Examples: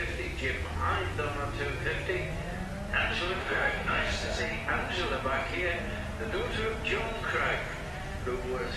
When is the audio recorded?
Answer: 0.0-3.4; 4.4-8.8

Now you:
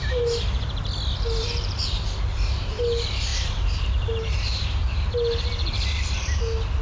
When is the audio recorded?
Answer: 0.0-6.8

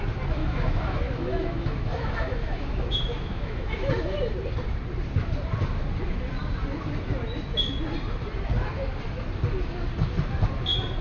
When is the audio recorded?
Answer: 0.0-0.4; 3.9-11.0

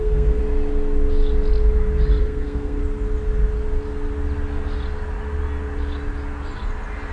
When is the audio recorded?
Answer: 0.4-2.2; 2.8-7.1

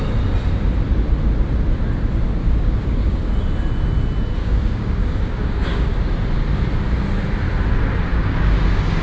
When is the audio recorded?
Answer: 0.0-2.4; 3.3-4.4; 6.0-8.1

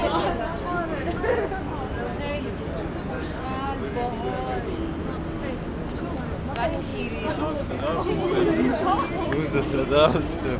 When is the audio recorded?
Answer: 0.0-10.6

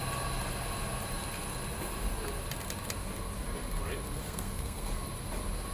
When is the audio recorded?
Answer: 0.0-4.2; 4.9-5.7

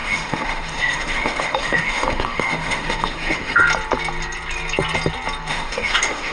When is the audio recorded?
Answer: 3.6-5.5